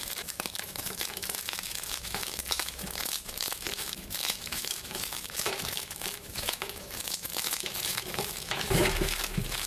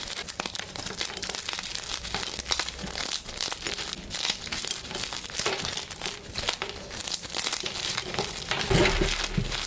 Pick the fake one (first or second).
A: first